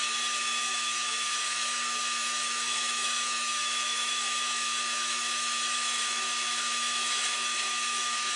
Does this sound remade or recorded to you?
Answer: remade